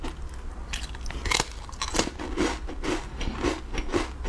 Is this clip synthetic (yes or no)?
no